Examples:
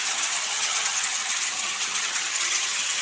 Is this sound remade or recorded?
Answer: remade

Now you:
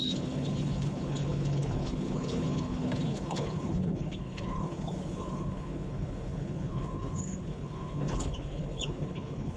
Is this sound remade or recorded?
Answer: remade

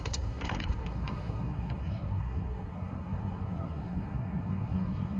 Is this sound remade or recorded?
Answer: remade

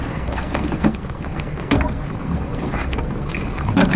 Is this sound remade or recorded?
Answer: remade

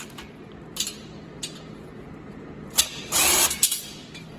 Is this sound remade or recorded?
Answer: remade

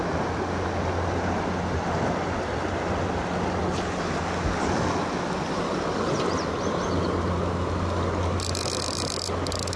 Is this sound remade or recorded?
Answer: recorded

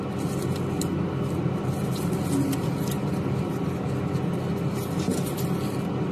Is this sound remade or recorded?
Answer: recorded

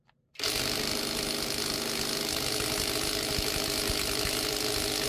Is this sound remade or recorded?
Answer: recorded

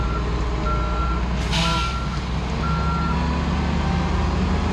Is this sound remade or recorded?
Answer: recorded